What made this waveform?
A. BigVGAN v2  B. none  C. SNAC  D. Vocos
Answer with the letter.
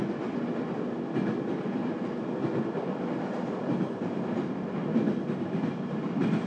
B